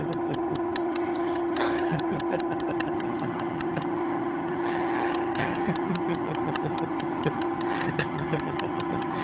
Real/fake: fake